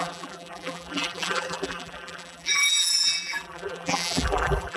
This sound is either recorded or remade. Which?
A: remade